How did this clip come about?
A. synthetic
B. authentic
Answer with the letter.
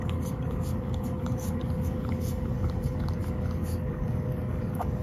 A